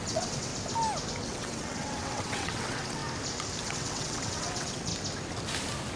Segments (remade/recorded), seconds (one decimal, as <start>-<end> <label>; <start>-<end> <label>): 0.0-0.5 remade; 0.5-1.2 recorded; 1.2-3.0 remade; 3.0-3.6 recorded; 3.6-4.9 remade; 4.9-6.0 recorded